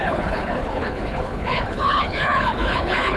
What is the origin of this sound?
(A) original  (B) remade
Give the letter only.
B